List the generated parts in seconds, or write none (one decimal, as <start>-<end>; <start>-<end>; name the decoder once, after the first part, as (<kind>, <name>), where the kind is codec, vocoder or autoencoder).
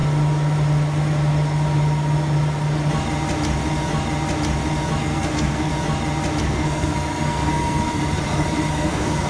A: 5.0-5.7 (codec, SNAC); 6.4-8.0; 8.7-9.3